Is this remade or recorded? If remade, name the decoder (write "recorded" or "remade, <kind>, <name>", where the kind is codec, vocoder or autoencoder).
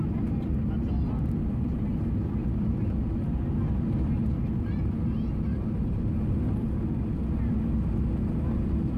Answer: recorded